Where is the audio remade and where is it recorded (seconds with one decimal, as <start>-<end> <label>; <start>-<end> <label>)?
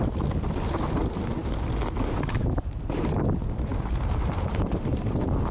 0.0-1.4 remade; 1.4-2.8 recorded; 2.8-5.5 remade